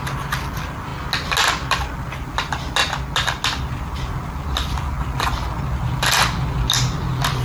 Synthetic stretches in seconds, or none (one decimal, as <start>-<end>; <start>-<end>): none